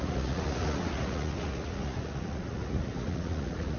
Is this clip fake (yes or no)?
yes